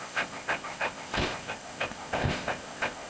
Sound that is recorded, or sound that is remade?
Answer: remade